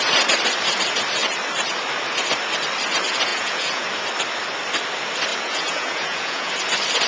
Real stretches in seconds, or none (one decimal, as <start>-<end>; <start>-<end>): 0.0-3.3; 3.9-5.3; 6.5-7.1